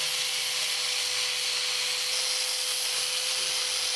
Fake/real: real